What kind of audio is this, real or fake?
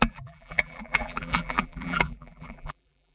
fake